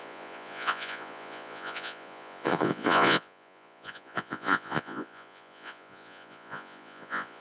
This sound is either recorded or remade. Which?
remade